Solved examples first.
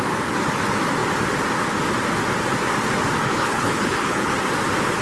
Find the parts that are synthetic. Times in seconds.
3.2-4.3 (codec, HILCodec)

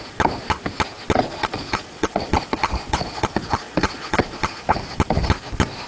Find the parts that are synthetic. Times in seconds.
1.2-4.7 (vocoder, Vocos)

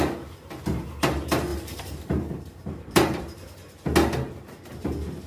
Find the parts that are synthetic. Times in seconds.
0.7-3.6 (vocoder, BigVGAN v2); 4.7-5.3

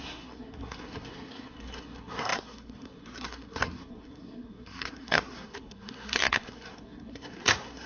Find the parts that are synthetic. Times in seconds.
0.0-7.9 (codec, SNAC)

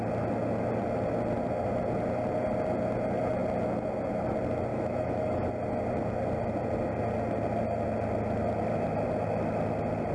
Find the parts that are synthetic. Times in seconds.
4.7-5.5 (autoencoder, DAC-VAE)